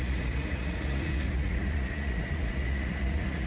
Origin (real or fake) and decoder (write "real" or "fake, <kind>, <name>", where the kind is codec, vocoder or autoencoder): fake, vocoder, Vocos